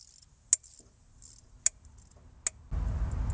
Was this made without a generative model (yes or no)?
yes